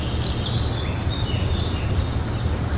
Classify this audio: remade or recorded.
recorded